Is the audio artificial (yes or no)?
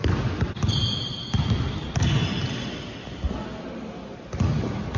no